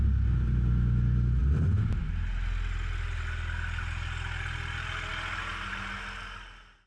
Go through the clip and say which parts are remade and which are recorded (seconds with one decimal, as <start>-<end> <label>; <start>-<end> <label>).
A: 0.0-6.9 recorded